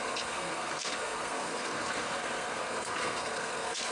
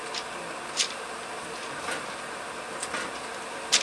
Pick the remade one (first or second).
first